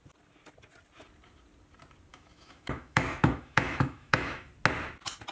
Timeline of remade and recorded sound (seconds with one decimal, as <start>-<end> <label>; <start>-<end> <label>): 0.0-2.1 recorded; 2.1-4.5 remade; 4.5-5.3 recorded